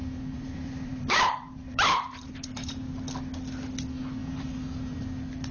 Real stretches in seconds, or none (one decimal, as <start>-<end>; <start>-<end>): 2.8-4.2; 5.0-5.5